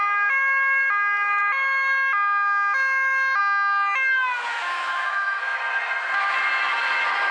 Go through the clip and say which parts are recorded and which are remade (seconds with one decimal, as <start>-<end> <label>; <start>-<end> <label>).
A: 0.0-4.5 recorded; 4.5-5.6 remade; 5.6-7.3 recorded

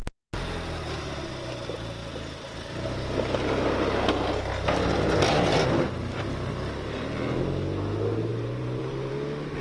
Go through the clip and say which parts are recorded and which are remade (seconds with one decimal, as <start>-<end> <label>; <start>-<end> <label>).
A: 0.0-8.3 recorded; 8.3-9.1 remade; 9.1-9.6 recorded

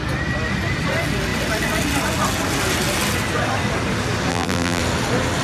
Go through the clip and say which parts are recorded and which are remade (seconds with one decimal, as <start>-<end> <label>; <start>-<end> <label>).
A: 0.0-4.3 recorded; 4.3-4.8 remade; 4.8-5.4 recorded

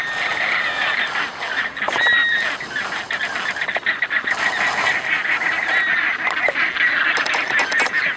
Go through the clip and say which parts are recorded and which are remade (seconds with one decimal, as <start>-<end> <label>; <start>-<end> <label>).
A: 0.0-8.2 recorded

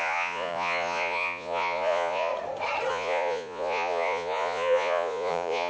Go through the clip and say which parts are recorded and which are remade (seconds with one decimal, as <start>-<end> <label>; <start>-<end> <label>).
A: 0.0-2.3 remade; 2.3-2.9 recorded; 2.9-5.7 remade

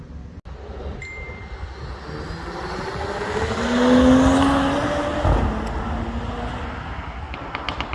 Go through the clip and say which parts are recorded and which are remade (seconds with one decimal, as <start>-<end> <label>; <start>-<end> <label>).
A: 0.0-7.9 recorded

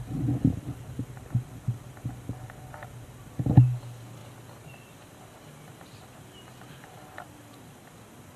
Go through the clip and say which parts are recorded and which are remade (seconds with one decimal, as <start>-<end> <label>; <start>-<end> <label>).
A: 0.0-8.4 recorded